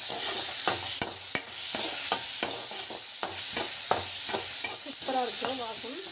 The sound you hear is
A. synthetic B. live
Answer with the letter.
B